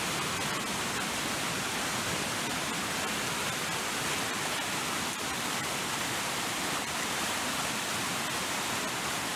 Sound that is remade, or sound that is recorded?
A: recorded